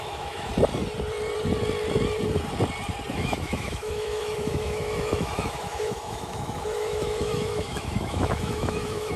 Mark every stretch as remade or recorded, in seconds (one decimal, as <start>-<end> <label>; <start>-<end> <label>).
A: 0.0-0.5 remade; 0.5-3.1 recorded; 3.1-9.2 remade